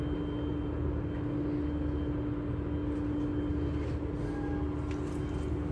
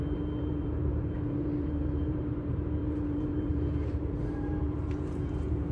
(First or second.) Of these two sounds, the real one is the first